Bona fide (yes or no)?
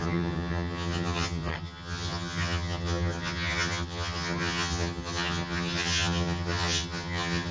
no